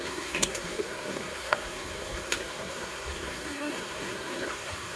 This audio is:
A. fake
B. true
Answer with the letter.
A